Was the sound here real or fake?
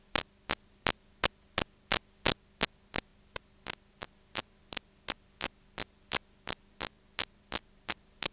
real